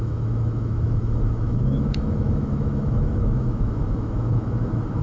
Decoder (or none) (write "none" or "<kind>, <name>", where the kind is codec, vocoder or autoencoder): autoencoder, DAC-VAE